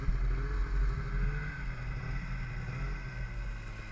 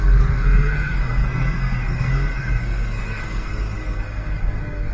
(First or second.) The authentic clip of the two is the first